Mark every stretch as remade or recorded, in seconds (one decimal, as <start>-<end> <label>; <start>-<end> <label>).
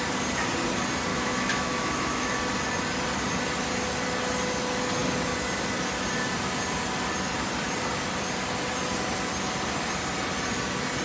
0.0-1.1 recorded; 1.1-2.4 remade; 2.4-11.0 recorded